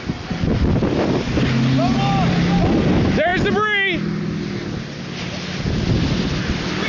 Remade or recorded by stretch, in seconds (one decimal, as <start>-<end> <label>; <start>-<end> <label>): 0.0-6.9 recorded